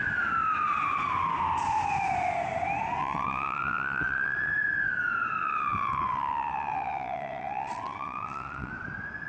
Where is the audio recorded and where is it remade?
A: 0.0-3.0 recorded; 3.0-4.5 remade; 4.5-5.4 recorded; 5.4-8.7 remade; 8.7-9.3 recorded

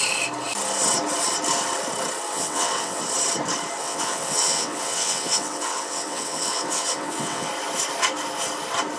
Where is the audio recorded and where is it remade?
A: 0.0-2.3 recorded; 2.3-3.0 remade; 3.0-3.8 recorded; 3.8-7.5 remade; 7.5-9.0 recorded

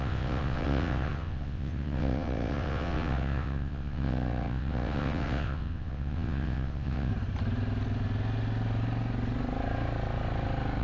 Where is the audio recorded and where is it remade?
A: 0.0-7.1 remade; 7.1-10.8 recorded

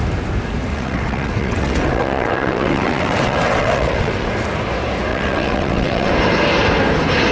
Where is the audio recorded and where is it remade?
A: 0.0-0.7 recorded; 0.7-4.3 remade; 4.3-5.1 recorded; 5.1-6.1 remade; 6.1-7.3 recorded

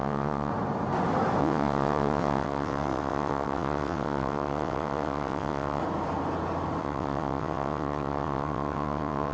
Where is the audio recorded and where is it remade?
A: 0.0-0.5 remade; 0.5-1.4 recorded; 1.4-5.8 remade; 5.8-6.8 recorded; 6.8-9.3 remade

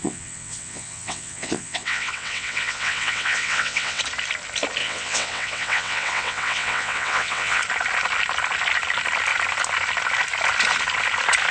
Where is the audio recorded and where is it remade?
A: 0.0-4.0 remade; 4.0-4.8 recorded; 4.8-7.6 remade; 7.6-11.5 recorded

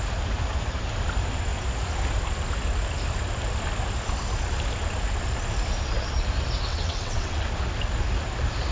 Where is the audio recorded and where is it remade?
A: 0.0-6.7 recorded; 6.7-7.4 remade; 7.4-8.7 recorded